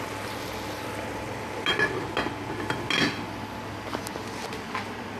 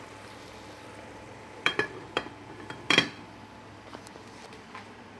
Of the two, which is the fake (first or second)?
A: second